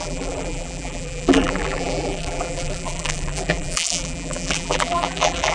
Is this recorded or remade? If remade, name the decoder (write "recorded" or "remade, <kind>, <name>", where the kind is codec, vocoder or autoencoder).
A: remade, vocoder, BigVGAN v2